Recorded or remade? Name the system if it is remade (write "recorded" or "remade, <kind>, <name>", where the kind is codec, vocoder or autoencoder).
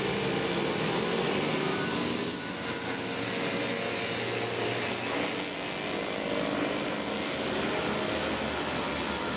recorded